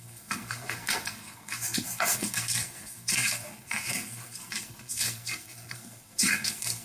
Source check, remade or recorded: remade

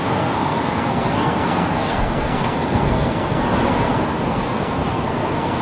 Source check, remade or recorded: remade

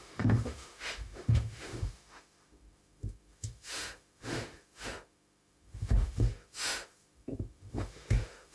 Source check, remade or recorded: remade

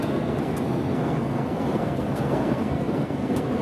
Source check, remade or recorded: remade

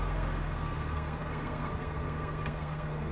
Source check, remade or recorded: remade